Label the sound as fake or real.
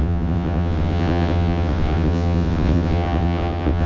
fake